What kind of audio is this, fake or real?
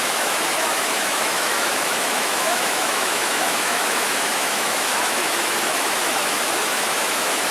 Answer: fake